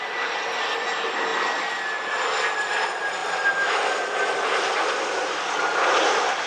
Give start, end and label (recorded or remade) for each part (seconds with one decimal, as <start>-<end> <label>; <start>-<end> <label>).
0.0-6.5 recorded